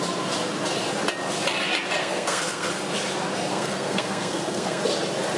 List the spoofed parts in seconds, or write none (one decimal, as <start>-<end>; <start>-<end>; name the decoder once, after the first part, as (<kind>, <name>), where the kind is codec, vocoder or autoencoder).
2.0-2.7 (codec, SNAC); 3.5-4.8